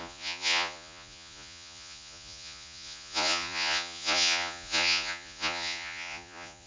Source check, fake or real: fake